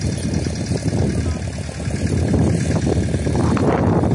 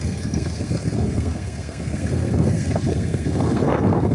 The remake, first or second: second